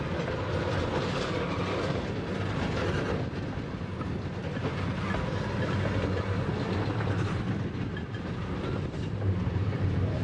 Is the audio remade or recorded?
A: recorded